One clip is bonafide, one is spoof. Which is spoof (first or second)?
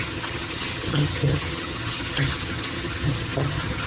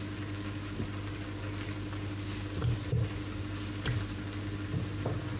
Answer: first